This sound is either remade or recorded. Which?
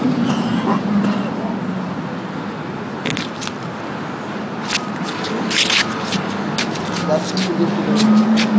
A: recorded